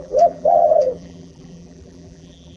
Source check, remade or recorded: remade